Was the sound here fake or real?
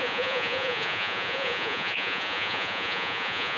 fake